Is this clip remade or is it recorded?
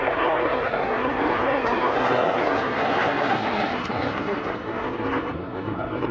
remade